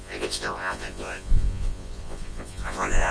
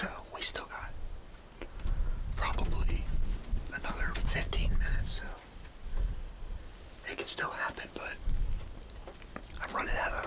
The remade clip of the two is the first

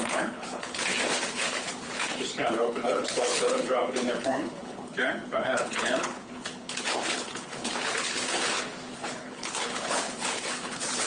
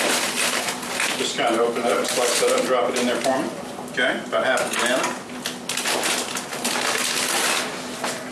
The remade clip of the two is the first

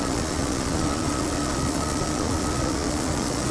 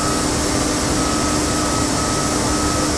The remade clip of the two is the first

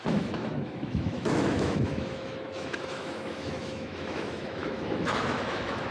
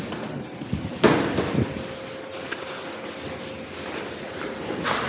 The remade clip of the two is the first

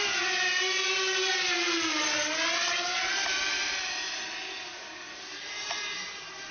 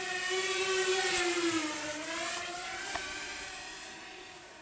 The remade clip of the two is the second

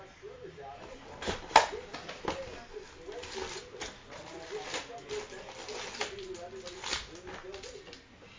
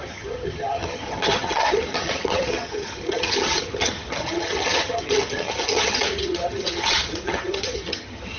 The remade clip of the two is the second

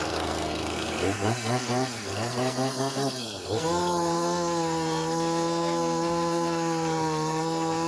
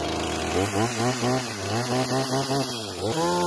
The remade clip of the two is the first